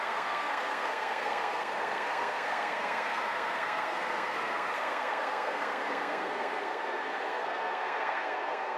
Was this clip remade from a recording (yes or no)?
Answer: yes